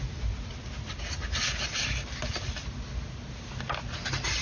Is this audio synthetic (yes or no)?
no